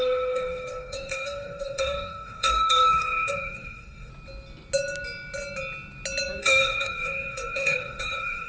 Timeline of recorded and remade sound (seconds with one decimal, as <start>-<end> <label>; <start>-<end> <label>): 0.0-4.1 remade; 4.1-6.4 recorded; 6.4-8.5 remade